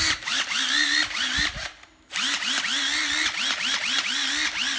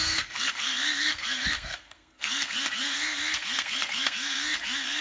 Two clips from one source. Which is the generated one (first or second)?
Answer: second